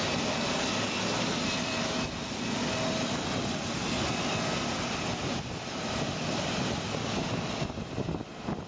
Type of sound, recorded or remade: recorded